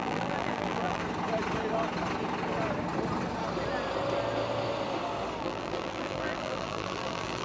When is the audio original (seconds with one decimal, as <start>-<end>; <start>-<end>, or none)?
1.0-5.4